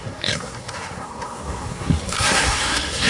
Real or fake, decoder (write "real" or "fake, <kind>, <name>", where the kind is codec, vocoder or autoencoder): fake, codec, SNAC